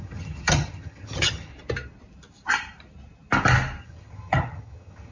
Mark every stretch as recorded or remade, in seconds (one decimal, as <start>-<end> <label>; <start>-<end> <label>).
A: 0.0-1.5 remade; 1.5-3.8 recorded; 3.8-5.1 remade